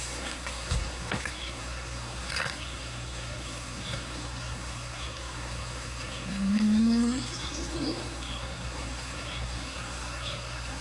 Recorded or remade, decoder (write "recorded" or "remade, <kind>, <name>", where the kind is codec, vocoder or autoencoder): remade, codec, SNAC